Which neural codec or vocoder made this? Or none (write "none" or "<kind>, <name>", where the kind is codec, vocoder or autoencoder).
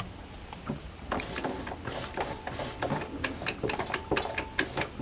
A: none